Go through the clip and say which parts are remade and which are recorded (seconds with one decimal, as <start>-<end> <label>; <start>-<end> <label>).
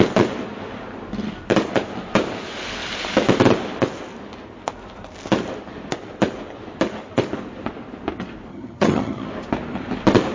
0.0-8.5 recorded; 8.5-9.3 remade; 9.3-10.3 recorded